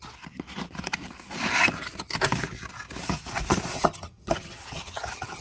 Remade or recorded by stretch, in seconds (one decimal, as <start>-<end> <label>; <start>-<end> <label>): 0.0-3.7 recorded; 3.7-5.4 remade